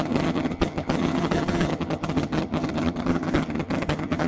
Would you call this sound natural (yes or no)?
no